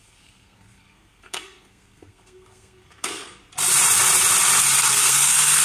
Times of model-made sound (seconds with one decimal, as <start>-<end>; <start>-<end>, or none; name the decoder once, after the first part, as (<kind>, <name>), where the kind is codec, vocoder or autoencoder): 0.0-3.4 (codec, SNAC); 4.8-5.6